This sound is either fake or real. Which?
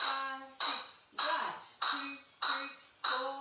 real